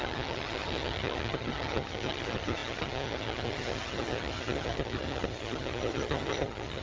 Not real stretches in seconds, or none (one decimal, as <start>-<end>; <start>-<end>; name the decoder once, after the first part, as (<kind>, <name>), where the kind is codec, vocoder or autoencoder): 0.0-6.8 (vocoder, HiFi-GAN)